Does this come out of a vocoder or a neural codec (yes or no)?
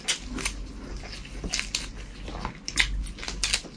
no